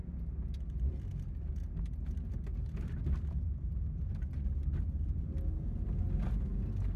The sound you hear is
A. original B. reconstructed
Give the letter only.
A